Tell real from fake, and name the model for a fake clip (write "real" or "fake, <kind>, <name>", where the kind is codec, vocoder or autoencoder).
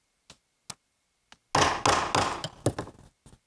real